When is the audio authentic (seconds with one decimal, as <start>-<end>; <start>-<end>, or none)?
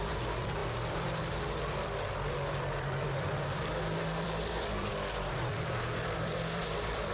none